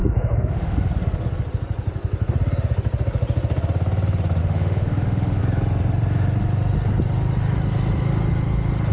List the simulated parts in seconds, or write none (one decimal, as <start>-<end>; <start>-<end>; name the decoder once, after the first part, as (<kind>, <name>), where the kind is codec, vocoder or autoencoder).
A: 0.0-0.8 (autoencoder, DAC-VAE); 4.4-5.4